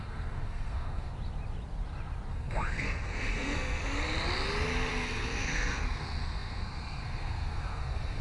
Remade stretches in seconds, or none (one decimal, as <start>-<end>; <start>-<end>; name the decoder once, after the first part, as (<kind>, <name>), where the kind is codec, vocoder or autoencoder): 0.0-1.1 (codec, SNAC); 2.3-3.8; 4.9-8.2